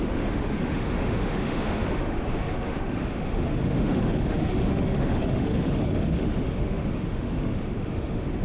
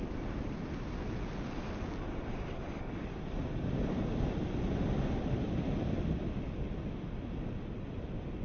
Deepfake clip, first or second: first